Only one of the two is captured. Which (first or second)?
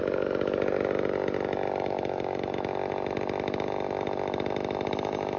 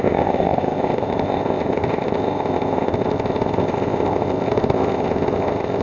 first